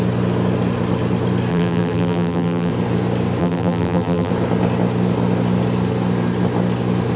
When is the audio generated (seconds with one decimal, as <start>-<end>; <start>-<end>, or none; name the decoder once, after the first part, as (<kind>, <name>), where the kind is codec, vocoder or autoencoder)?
1.5-2.7 (vocoder, BigVGAN v2); 3.4-4.3